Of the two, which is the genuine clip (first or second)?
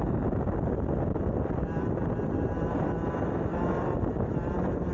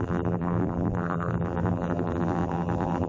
first